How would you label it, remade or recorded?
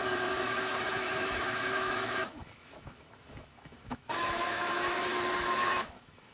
remade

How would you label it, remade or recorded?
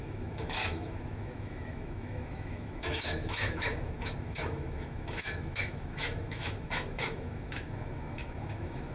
remade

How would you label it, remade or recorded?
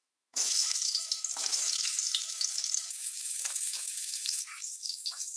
remade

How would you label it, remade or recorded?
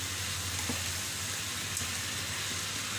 recorded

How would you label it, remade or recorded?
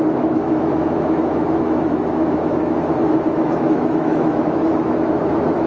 remade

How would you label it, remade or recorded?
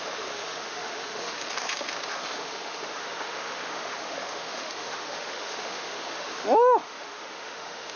remade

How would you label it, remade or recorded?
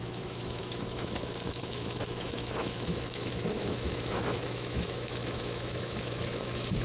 remade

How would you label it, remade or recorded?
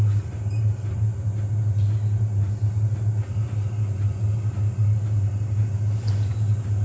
recorded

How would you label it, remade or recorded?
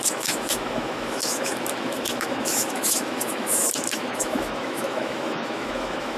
remade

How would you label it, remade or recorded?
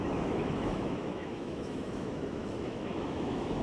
remade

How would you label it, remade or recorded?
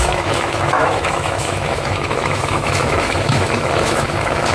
remade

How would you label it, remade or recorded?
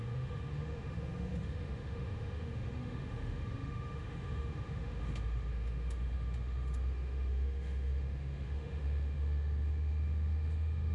remade